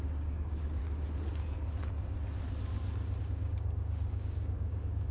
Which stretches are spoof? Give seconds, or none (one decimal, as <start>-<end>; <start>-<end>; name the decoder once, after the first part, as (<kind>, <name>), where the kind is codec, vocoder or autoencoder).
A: 0.0-0.8 (codec, DAC); 3.2-5.1